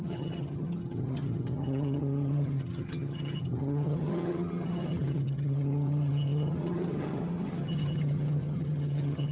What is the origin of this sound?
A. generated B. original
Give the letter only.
A